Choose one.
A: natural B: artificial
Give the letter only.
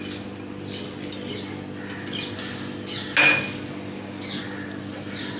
A